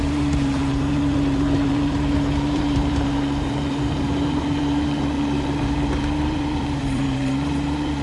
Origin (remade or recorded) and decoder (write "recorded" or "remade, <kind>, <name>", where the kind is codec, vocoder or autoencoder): remade, vocoder, BigVGAN v2